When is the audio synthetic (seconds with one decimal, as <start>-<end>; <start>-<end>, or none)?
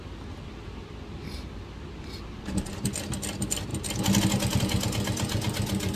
none